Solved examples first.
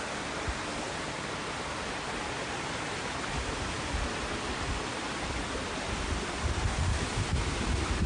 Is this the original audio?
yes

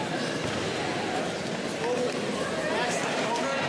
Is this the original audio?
no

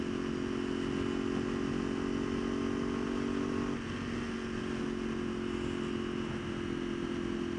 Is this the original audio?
yes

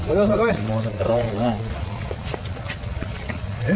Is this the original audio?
no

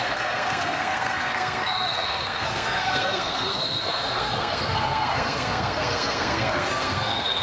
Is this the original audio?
no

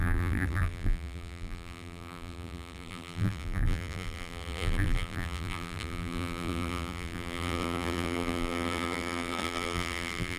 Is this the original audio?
no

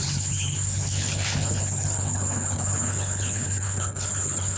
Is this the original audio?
no